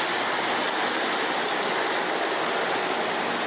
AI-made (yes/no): no